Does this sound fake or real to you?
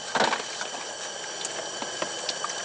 real